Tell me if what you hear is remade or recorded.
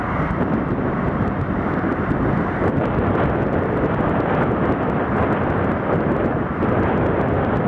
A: remade